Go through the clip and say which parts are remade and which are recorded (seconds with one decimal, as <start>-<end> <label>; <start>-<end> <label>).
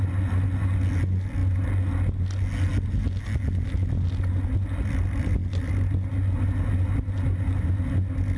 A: 0.0-8.4 recorded